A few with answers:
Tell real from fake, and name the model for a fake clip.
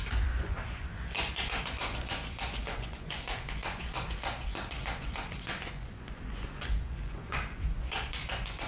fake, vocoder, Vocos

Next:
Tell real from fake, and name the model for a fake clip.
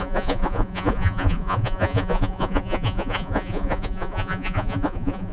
fake, vocoder, Vocos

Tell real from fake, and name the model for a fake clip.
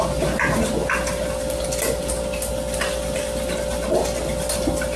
real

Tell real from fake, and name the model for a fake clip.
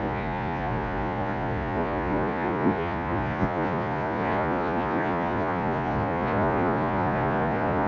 fake, vocoder, Vocos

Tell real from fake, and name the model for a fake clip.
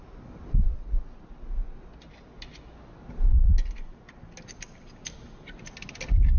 real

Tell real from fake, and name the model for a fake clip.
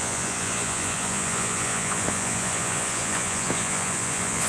fake, vocoder, Vocos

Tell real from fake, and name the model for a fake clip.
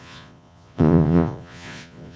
fake, vocoder, Vocos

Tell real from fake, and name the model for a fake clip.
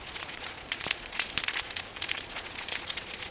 fake, vocoder, Vocos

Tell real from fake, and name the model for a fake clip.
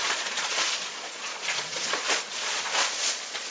fake, vocoder, Vocos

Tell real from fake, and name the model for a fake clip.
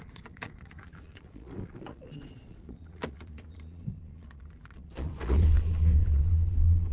fake, vocoder, Vocos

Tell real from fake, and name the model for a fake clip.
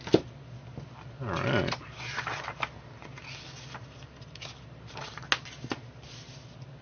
real